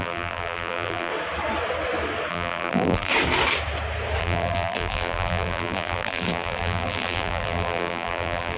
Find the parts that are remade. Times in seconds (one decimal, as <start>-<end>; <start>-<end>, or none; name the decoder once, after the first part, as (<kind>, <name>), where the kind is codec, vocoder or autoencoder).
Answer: 0.0-1.1 (vocoder, BigVGAN v2); 2.3-3.1; 4.2-8.6